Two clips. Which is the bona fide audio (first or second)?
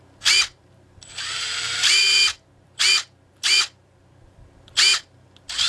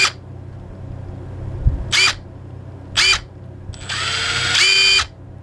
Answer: second